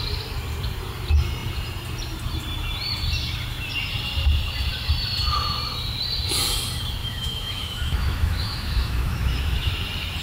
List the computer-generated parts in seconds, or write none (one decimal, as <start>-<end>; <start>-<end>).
7.0-9.7